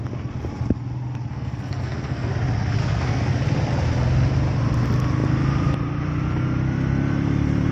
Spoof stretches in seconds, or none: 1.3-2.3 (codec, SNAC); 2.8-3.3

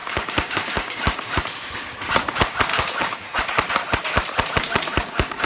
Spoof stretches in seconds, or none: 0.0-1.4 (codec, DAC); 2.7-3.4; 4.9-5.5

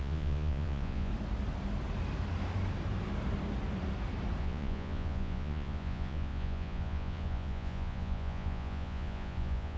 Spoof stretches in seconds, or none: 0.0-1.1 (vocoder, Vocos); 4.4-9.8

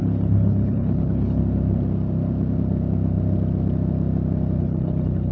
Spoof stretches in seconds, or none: 0.0-1.4 (codec, HILCodec); 4.6-5.3

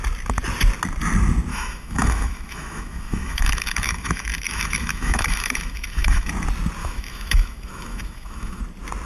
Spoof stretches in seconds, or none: 1.5-6.3 (autoencoder, DAC-VAE); 6.8-8.6